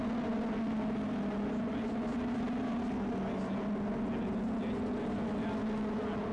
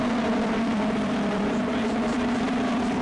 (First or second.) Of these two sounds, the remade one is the second